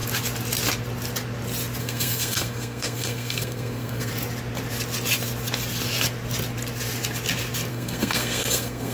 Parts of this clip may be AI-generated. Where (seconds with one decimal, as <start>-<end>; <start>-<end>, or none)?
1.8-4.1; 7.7-8.9